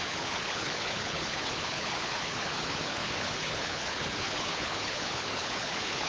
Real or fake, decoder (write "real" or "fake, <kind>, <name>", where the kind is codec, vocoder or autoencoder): fake, codec, HILCodec